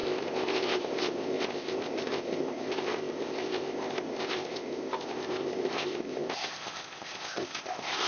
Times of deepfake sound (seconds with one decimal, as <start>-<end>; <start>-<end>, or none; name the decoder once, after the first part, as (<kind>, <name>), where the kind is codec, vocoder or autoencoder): 0.0-8.1 (codec, ZipCodec)